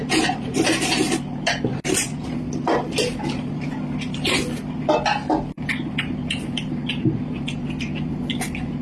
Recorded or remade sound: recorded